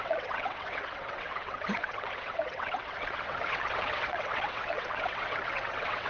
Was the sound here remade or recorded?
remade